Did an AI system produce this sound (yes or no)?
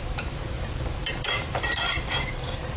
yes